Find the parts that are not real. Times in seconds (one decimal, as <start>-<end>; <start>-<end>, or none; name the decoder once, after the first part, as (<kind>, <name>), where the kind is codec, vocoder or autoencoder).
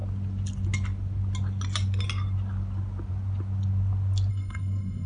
4.3-5.1 (codec, SNAC)